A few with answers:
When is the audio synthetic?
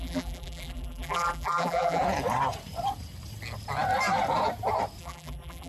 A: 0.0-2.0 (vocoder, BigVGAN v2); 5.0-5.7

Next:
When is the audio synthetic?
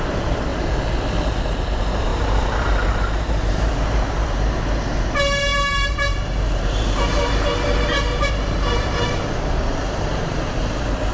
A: 0.0-0.5 (vocoder, BigVGAN v2); 1.4-11.1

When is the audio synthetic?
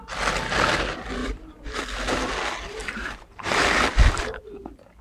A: 1.2-1.8 (vocoder, BigVGAN v2); 2.8-3.5